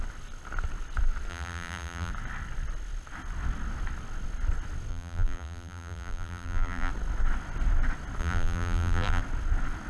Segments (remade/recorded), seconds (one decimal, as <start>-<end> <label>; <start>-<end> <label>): 0.0-1.3 recorded; 1.3-2.1 remade; 2.1-4.9 recorded; 4.9-6.9 remade; 6.9-8.2 recorded; 8.2-9.2 remade; 9.2-9.9 recorded